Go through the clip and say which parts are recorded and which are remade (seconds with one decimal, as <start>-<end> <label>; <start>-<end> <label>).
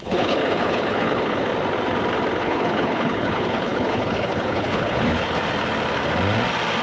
0.0-1.5 remade; 1.5-2.4 recorded; 2.4-5.4 remade; 5.4-6.8 recorded